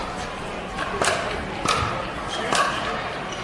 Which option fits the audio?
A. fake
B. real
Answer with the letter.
B